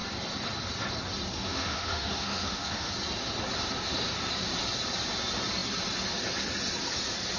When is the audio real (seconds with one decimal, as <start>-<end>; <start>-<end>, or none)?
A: 0.0-1.3; 2.9-7.4